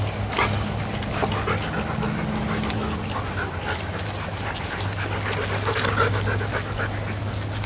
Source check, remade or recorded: recorded